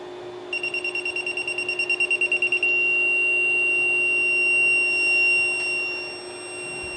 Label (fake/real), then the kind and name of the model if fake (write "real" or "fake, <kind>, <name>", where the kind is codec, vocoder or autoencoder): real